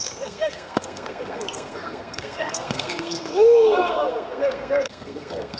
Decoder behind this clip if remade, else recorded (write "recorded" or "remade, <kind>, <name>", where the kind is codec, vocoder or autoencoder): remade, codec, SNAC